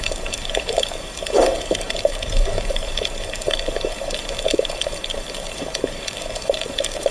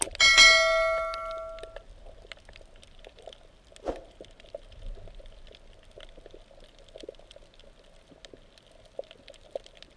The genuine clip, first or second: second